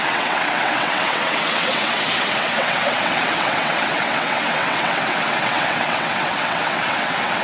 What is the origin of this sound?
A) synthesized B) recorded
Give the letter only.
A